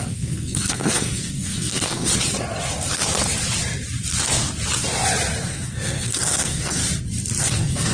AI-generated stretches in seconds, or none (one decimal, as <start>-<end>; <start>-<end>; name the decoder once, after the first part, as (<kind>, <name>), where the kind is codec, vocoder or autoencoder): 0.0-2.1 (codec, SNAC); 5.4-6.8; 7.4-7.9